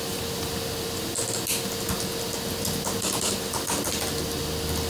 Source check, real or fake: real